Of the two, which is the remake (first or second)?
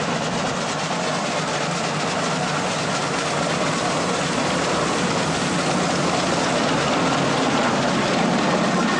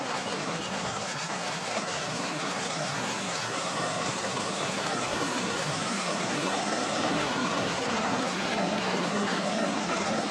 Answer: second